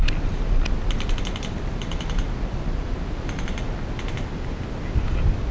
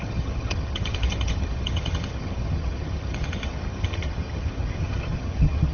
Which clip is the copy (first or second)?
second